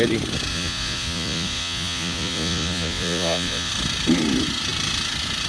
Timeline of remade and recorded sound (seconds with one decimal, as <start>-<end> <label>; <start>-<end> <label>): 0.0-0.5 recorded; 0.5-3.7 remade; 3.7-5.5 recorded